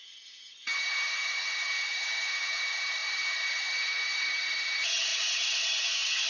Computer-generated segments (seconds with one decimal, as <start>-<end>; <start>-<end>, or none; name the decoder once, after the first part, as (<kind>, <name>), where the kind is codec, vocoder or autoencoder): 0.0-6.3 (vocoder, HiFi-GAN)